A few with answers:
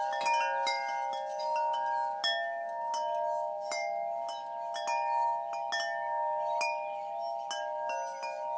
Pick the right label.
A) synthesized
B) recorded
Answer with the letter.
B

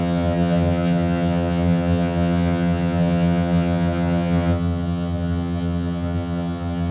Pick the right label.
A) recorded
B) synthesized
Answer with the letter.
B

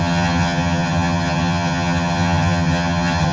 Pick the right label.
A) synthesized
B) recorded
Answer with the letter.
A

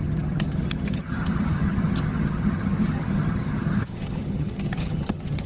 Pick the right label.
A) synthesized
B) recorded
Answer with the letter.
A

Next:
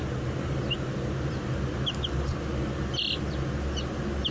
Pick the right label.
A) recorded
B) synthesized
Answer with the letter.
A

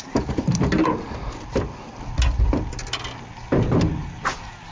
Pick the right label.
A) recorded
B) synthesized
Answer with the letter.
A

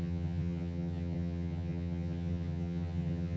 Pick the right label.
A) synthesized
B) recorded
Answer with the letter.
A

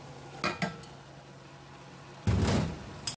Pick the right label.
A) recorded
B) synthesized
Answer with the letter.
A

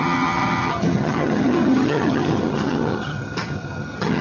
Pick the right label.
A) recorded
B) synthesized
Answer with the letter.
B